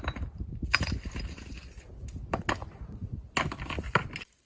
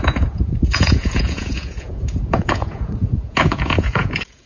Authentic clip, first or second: first